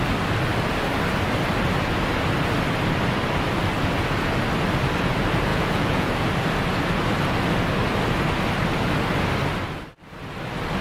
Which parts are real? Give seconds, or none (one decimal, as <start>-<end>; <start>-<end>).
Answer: 0.0-5.5; 6.3-10.8